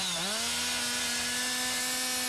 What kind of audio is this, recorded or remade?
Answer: recorded